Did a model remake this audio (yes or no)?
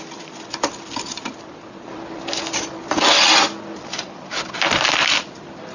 no